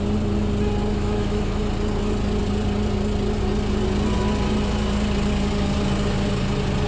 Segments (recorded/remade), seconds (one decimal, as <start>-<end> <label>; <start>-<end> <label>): 0.0-0.9 recorded; 0.9-1.6 remade; 1.6-6.9 recorded